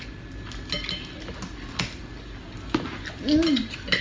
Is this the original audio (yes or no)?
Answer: yes